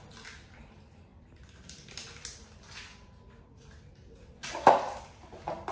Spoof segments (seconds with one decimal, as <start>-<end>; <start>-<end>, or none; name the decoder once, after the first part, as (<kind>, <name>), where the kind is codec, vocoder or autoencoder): none